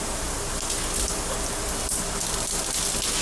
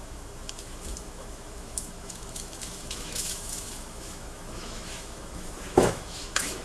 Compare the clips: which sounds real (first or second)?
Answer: first